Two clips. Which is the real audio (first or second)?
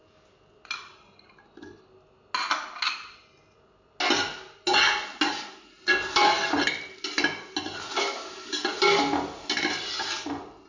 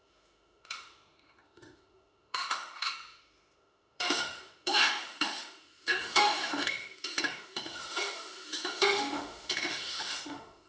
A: first